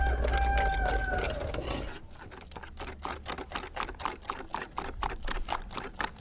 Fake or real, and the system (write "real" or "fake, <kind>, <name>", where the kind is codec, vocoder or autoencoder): real